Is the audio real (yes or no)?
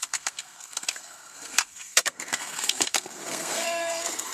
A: no